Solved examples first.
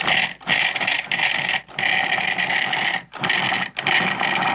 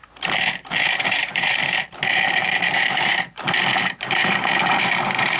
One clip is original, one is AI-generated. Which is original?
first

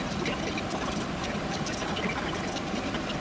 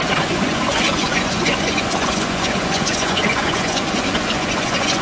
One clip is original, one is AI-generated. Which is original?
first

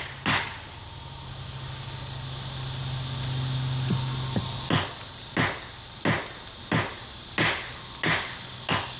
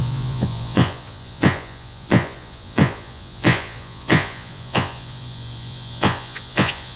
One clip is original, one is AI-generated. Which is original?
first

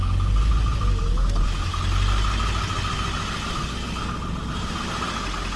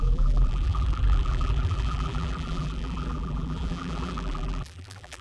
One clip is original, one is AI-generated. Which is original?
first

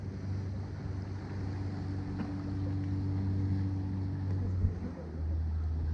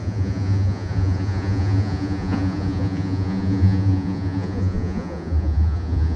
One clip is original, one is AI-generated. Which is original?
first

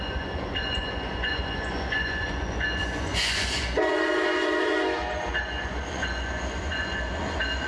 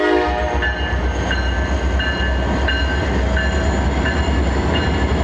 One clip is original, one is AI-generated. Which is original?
second